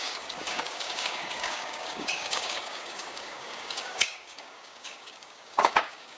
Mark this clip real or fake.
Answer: fake